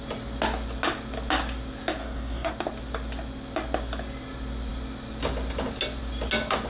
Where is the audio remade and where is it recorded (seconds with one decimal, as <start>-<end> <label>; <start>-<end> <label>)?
0.0-2.0 recorded; 2.0-2.5 remade; 2.5-6.7 recorded